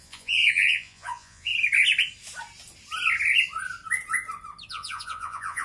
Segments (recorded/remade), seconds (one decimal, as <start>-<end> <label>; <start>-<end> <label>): 0.0-1.5 remade; 1.5-4.7 recorded; 4.7-5.6 remade